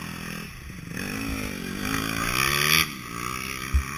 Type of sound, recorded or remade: recorded